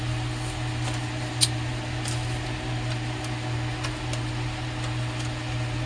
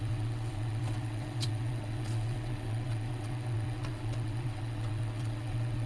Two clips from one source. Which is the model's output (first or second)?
second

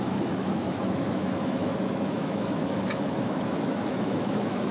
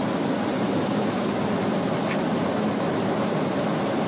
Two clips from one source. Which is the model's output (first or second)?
first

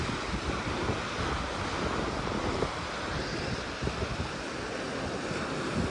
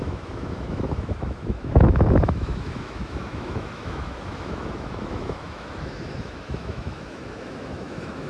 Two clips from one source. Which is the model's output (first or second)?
second